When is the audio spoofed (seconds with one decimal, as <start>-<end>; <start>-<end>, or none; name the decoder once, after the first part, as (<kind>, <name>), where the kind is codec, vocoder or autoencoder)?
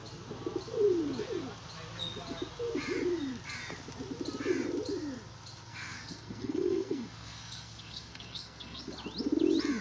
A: 5.7-8.8 (codec, SNAC)